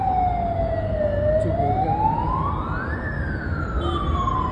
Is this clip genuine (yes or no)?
yes